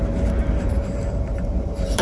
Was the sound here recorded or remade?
remade